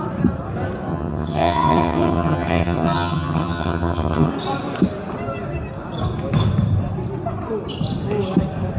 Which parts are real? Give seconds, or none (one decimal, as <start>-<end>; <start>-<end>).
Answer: 0.0-0.9; 4.3-8.8